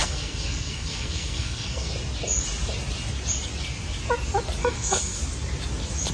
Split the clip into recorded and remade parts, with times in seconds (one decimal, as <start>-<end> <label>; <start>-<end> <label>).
0.0-1.9 remade; 1.9-4.6 recorded; 4.6-5.2 remade; 5.2-6.1 recorded